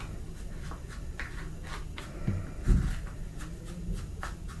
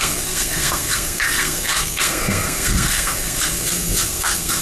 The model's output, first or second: second